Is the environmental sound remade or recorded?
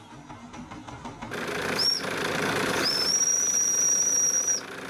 recorded